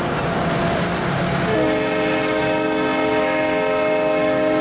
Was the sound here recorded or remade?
recorded